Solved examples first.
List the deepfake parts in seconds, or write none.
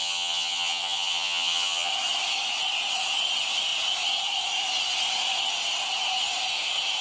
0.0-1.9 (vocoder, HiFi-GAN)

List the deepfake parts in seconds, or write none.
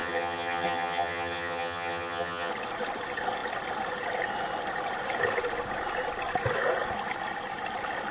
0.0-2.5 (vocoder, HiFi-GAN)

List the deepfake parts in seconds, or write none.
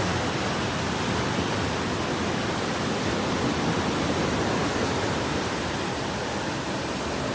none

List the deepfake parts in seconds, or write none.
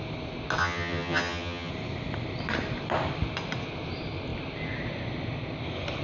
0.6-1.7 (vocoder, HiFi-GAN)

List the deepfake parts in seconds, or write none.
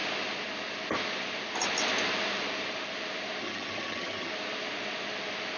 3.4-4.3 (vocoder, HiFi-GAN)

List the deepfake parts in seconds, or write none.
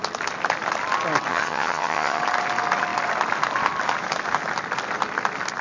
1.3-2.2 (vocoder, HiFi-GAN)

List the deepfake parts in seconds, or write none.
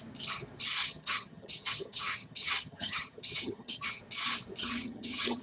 0.8-4.0 (vocoder, HiFi-GAN); 4.6-5.4